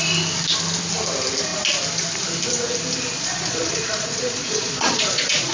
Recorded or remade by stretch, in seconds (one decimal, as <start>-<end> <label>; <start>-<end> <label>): 0.0-3.1 recorded; 3.1-5.5 remade